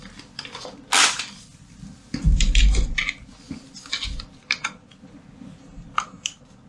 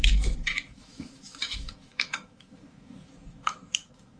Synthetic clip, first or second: second